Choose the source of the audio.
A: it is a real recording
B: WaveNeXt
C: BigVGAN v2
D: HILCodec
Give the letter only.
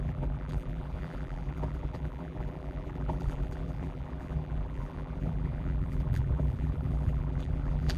C